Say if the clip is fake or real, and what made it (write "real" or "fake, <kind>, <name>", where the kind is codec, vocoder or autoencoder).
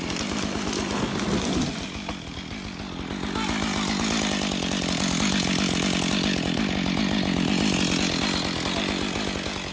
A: real